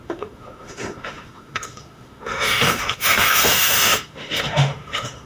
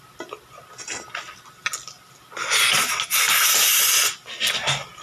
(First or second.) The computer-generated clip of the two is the first